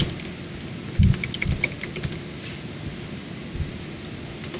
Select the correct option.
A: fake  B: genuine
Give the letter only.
B